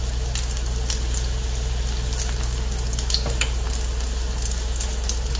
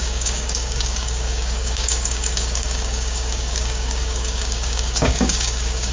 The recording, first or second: first